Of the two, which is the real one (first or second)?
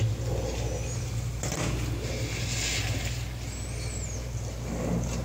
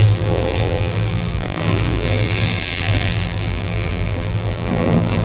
first